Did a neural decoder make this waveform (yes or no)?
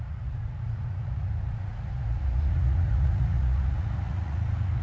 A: yes